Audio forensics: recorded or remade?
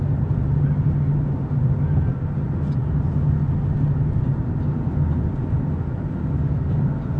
recorded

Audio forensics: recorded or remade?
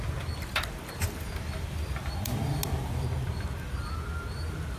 recorded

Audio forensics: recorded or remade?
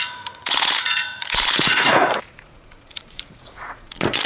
remade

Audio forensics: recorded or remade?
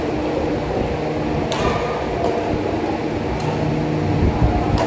recorded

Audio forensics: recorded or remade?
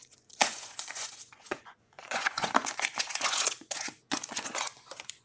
remade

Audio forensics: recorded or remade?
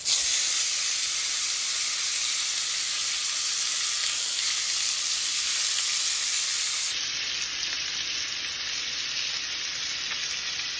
recorded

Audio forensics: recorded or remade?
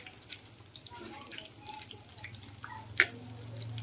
recorded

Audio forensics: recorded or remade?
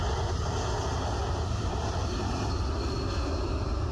recorded